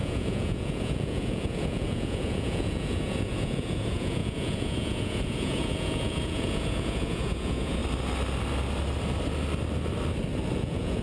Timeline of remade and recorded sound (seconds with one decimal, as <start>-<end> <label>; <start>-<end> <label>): 0.0-7.8 remade; 7.8-10.6 recorded; 10.6-11.0 remade